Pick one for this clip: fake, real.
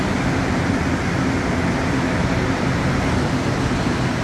real